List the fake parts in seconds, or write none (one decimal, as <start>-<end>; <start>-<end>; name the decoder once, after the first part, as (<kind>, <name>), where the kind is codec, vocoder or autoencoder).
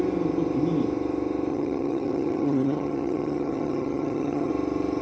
1.5-4.5 (vocoder, HiFi-GAN)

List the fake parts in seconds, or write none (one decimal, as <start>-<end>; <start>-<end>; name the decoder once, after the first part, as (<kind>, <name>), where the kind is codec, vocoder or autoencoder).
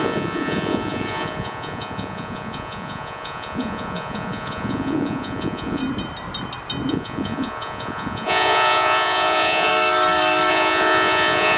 0.0-5.8 (vocoder, Vocos); 6.9-9.7; 10.5-11.6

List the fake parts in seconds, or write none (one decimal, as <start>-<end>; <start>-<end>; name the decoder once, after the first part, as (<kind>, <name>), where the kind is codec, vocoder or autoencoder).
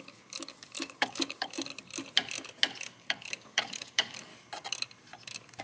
0.0-1.7 (codec, DAC); 3.0-4.3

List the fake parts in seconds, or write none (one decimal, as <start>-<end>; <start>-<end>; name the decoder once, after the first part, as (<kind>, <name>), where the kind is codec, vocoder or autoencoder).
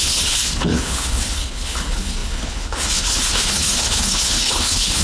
0.0-5.0 (codec, HILCodec)